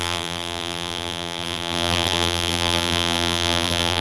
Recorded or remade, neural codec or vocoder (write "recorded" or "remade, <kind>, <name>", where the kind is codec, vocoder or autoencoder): remade, vocoder, BigVGAN v2